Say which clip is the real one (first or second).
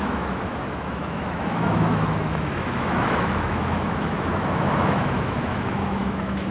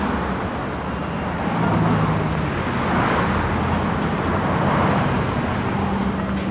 second